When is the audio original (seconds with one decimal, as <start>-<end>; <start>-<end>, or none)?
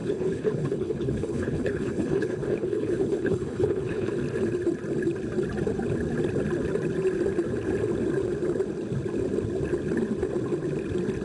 4.1-11.2